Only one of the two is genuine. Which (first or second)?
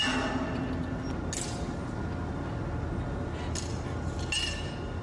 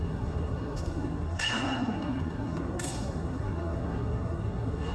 first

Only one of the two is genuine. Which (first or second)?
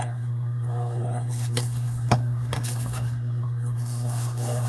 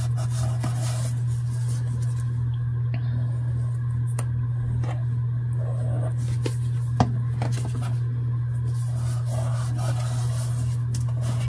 second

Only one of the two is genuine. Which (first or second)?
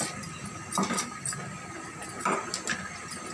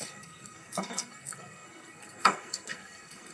first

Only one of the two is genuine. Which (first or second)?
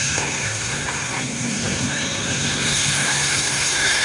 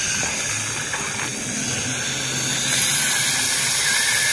second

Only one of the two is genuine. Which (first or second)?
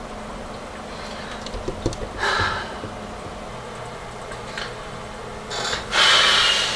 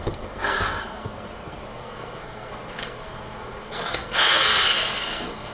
first